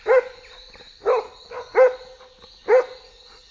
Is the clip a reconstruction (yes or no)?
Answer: no